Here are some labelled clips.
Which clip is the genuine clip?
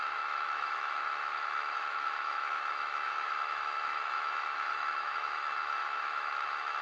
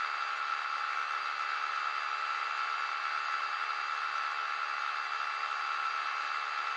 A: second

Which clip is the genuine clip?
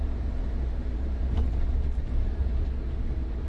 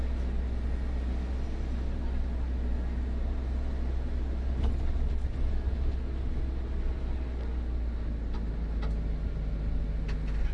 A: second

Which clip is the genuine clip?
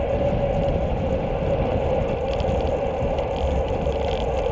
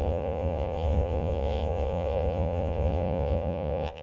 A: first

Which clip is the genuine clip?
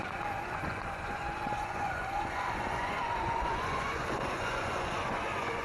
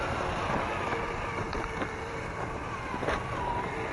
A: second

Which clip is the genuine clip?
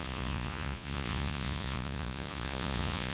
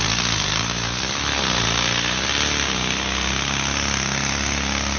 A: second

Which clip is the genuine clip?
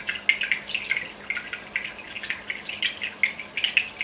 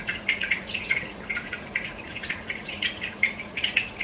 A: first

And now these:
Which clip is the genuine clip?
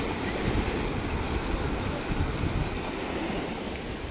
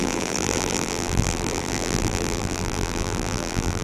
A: first